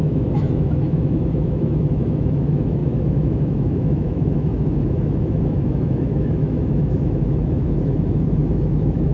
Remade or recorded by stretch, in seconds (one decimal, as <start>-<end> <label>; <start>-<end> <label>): 0.0-9.1 remade